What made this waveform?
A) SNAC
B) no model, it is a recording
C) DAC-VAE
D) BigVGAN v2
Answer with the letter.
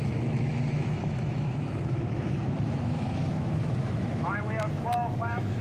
C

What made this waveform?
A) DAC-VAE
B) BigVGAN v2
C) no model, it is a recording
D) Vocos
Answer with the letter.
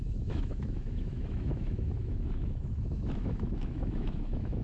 A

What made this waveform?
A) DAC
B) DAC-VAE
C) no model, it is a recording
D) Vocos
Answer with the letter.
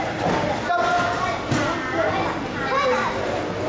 C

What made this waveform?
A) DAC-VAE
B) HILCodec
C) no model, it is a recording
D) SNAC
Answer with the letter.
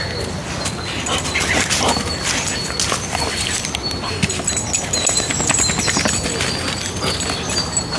C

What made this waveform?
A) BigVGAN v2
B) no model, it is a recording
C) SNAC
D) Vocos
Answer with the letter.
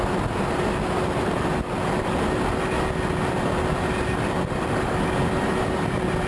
B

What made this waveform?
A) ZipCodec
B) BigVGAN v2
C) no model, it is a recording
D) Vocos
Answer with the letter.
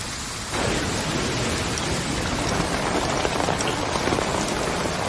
C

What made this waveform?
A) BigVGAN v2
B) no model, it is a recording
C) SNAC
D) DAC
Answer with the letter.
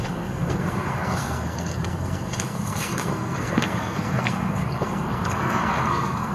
C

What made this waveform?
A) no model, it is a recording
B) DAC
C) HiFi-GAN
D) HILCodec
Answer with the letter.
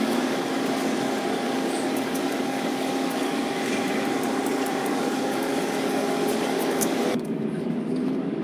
B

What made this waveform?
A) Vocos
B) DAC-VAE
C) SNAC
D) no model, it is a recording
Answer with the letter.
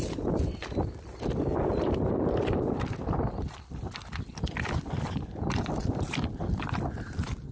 D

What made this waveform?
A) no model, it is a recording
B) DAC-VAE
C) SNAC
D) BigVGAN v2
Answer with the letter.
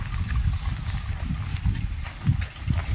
A